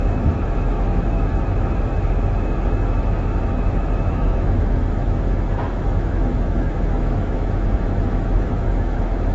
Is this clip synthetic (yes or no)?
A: yes